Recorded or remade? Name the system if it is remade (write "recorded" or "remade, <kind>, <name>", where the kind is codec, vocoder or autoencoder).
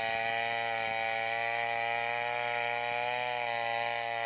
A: recorded